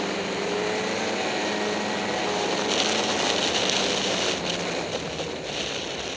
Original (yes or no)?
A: yes